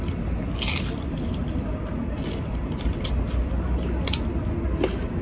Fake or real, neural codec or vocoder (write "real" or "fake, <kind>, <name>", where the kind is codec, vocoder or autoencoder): real